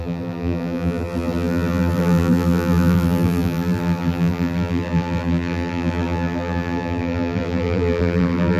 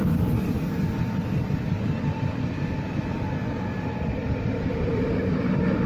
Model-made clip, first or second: first